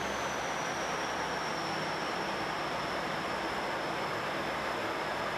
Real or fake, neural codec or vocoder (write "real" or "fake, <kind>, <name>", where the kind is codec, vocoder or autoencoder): real